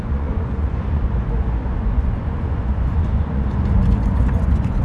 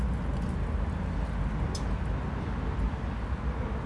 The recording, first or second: second